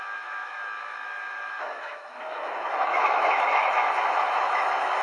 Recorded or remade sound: remade